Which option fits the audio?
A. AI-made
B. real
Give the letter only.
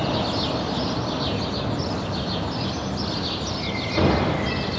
B